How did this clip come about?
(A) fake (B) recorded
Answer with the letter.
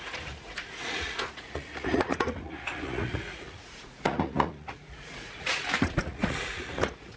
A